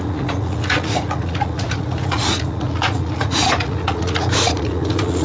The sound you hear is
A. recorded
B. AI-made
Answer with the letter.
B